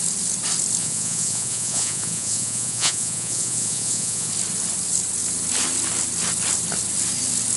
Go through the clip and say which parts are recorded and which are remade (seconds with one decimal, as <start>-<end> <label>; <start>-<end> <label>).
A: 0.0-0.8 recorded; 0.8-4.3 remade; 4.3-7.6 recorded

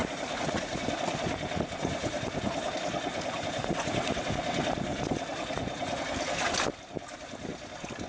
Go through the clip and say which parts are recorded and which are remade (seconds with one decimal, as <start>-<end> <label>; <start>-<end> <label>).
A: 0.0-0.9 remade; 0.9-1.8 recorded; 1.8-2.7 remade; 2.7-3.1 recorded; 3.1-4.3 remade; 4.3-4.9 recorded; 4.9-6.0 remade; 6.0-8.1 recorded